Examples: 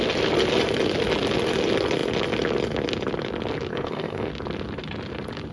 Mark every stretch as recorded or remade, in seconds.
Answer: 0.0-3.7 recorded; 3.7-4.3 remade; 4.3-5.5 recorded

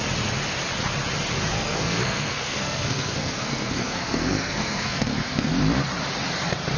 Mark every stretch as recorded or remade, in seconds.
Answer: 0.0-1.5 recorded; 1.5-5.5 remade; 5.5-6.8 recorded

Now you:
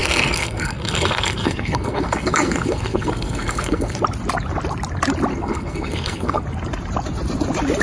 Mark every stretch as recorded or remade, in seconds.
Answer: 0.0-4.0 remade; 4.0-5.3 recorded; 5.3-6.4 remade; 6.4-7.8 recorded